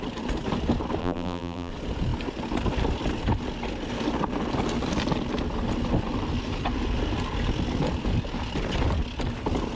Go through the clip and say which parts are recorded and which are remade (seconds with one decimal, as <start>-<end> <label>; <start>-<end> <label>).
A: 0.0-1.0 recorded; 1.0-1.7 remade; 1.7-9.8 recorded